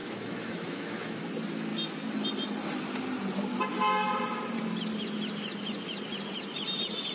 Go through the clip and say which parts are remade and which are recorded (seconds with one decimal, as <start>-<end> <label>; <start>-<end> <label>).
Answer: 0.0-1.2 remade; 1.2-7.1 recorded